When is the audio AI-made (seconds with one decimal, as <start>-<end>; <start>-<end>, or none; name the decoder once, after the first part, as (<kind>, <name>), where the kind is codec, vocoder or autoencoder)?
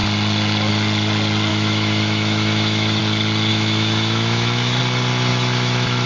1.5-3.0 (autoencoder, DAC-VAE); 3.5-4.8; 5.3-6.1